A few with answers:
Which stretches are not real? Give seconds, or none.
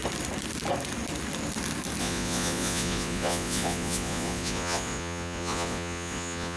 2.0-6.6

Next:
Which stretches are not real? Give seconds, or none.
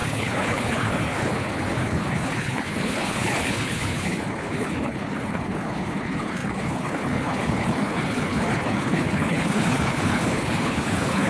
0.0-11.3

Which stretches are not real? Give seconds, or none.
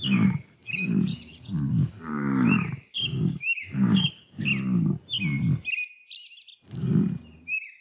0.0-4.5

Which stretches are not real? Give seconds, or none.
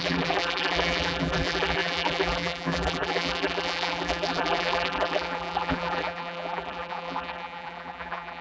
0.0-8.4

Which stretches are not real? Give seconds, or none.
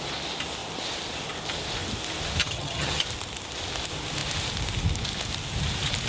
2.4-3.0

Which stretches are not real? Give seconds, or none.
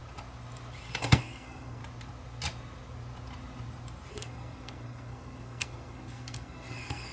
1.0-1.8; 4.1-7.1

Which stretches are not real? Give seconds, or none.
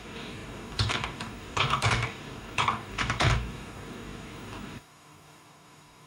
0.0-6.1